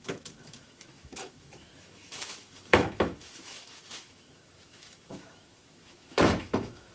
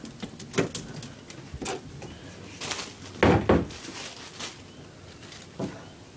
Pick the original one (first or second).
second